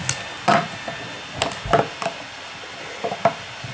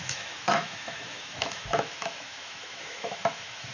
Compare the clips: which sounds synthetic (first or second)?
second